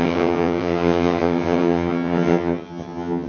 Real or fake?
fake